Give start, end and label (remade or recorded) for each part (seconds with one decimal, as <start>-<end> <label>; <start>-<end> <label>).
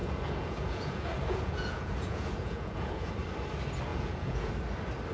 0.0-3.1 remade; 3.1-3.9 recorded; 3.9-4.5 remade; 4.5-5.1 recorded